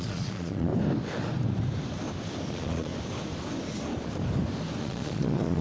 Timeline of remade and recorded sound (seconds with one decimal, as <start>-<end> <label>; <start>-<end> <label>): 0.0-0.7 remade; 0.7-2.5 recorded; 2.5-2.9 remade; 2.9-4.8 recorded; 4.8-5.6 remade